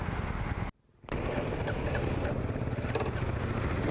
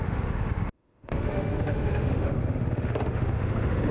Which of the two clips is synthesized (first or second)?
second